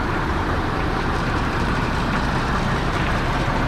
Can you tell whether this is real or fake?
fake